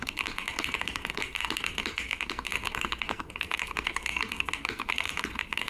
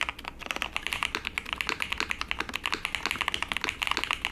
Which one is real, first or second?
second